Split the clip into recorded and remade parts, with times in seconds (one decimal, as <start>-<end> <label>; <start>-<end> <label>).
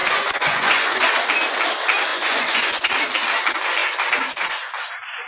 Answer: 0.0-1.1 remade; 1.1-2.1 recorded; 2.1-2.9 remade; 2.9-5.3 recorded